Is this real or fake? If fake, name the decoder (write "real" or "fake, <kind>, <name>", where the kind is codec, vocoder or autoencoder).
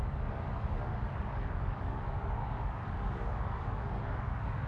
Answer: fake, codec, DAC